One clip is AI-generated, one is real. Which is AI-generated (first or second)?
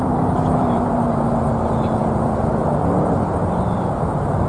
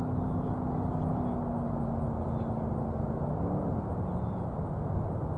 first